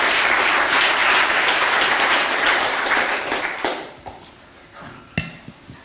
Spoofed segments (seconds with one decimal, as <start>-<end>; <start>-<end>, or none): 1.0-4.5